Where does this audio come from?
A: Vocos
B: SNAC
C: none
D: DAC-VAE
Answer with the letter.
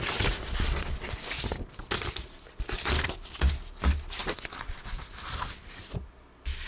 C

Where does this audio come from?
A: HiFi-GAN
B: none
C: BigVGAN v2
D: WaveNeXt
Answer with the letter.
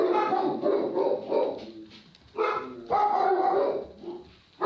B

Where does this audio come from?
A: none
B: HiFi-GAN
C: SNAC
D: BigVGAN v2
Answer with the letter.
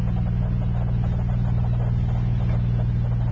A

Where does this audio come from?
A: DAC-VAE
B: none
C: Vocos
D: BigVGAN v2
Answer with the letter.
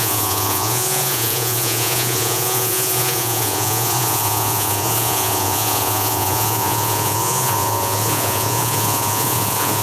C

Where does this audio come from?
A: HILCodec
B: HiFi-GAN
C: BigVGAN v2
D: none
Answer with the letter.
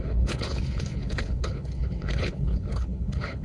A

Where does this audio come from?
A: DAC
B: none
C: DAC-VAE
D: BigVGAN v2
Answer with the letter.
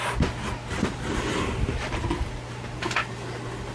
B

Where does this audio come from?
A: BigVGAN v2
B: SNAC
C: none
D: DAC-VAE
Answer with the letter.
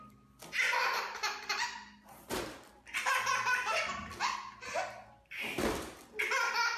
C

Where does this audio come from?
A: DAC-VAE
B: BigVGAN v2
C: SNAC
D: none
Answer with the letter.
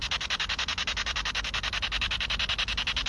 B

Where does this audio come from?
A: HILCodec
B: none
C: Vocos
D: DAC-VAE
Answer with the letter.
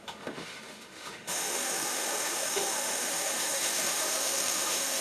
D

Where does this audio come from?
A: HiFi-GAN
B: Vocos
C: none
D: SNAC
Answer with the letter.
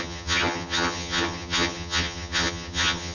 A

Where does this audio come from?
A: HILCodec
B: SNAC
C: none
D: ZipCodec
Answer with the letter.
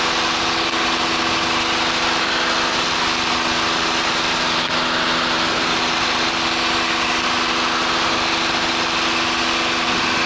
C